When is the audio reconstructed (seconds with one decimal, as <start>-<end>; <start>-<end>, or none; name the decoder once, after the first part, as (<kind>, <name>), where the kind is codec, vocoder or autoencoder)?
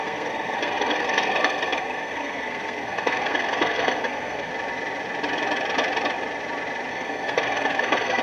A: 0.0-4.5 (codec, SNAC); 6.9-8.2